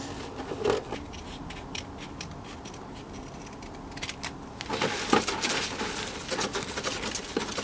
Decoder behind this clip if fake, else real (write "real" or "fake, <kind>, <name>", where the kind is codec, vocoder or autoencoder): real